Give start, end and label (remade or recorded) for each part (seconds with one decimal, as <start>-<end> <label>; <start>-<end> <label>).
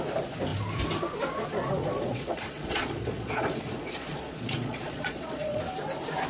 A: 0.0-1.8 recorded; 1.8-5.6 remade; 5.6-6.3 recorded